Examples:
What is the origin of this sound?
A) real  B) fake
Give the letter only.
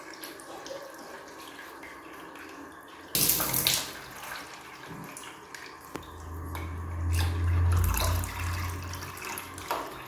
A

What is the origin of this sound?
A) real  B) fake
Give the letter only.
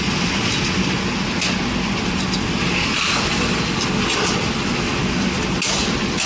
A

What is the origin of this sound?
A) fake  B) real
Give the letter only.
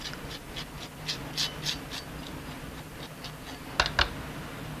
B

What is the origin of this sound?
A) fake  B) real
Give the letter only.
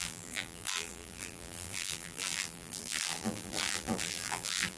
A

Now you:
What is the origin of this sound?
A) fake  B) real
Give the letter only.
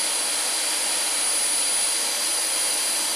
B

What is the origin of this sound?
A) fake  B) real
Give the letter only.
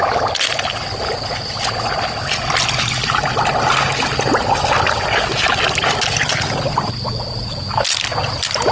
B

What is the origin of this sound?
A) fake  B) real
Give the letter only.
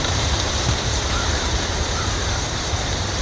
A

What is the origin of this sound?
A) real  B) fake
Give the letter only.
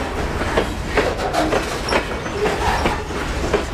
A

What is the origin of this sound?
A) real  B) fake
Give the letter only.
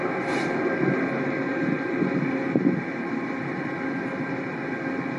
A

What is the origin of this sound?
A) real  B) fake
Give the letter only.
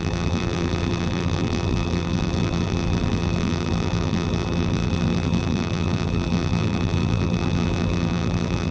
B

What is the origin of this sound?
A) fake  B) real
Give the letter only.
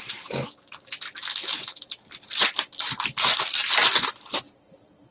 B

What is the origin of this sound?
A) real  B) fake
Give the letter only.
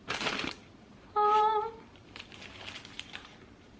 B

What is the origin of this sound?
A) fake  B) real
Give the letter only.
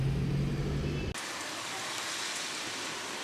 B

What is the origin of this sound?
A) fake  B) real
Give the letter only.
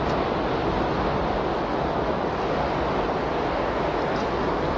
B